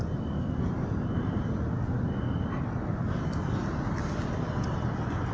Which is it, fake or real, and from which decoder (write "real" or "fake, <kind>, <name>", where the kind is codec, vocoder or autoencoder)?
real